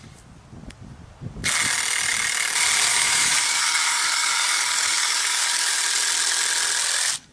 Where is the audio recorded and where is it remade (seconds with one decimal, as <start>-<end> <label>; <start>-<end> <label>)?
0.0-2.9 recorded; 2.9-5.8 remade; 5.8-7.3 recorded

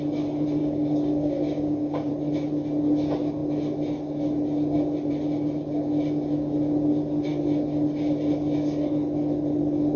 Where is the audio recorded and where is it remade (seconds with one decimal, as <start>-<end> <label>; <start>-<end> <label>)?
0.0-0.6 recorded; 0.6-2.1 remade; 2.1-10.0 recorded

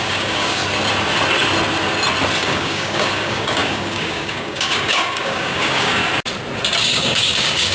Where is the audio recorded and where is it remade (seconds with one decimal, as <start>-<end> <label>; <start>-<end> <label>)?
0.0-0.6 remade; 0.6-2.4 recorded; 2.4-6.0 remade; 6.0-6.8 recorded; 6.8-7.7 remade